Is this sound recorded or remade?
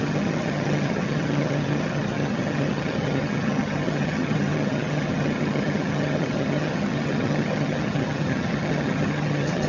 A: remade